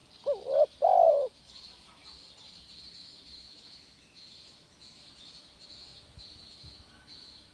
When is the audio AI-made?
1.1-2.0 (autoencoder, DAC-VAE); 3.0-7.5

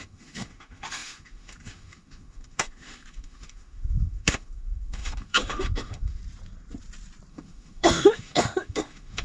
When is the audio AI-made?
0.0-6.2 (autoencoder, DAC-VAE); 7.3-9.2

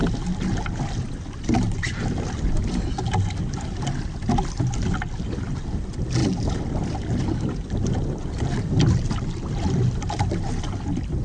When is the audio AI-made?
none

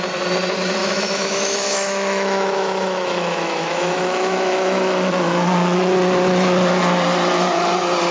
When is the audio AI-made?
0.8-5.1 (autoencoder, DAC-VAE)

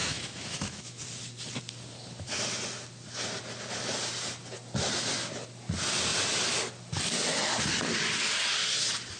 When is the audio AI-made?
0.0-1.0 (autoencoder, DAC-VAE)

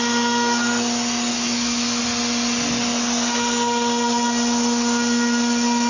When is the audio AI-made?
1.3-2.0 (autoencoder, DAC-VAE)

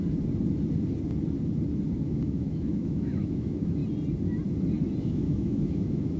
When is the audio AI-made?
2.0-3.8 (autoencoder, DAC-VAE); 5.0-6.2

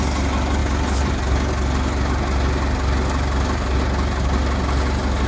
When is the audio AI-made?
none